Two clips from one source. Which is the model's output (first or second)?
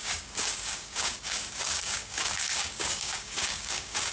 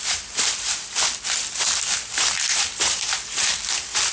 first